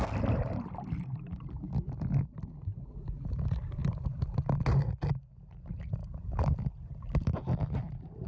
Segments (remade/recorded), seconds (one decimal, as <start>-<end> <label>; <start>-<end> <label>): 0.0-8.3 recorded